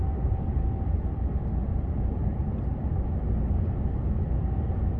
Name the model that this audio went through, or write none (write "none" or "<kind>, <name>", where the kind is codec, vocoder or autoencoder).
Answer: none